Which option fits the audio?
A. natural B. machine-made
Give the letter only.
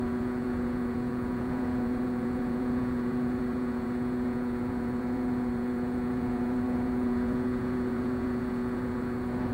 B